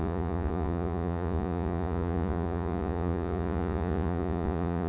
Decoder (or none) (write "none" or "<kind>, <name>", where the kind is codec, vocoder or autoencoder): vocoder, Vocos